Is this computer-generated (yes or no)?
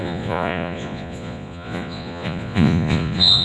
yes